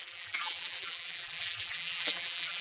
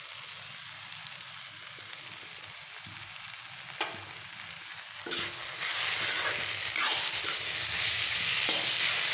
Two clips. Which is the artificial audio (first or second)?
first